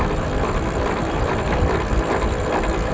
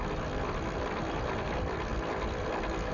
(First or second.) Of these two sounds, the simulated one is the first